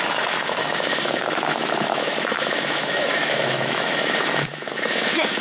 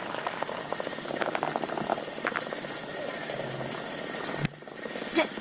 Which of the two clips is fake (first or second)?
first